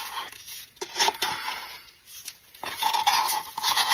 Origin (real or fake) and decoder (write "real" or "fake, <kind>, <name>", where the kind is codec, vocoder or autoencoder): fake, vocoder, Vocos